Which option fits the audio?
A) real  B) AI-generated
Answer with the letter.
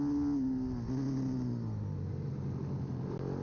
A